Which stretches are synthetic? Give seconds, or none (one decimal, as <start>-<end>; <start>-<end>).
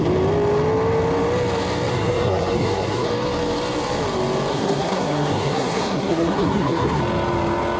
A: 1.9-3.1; 4.5-7.0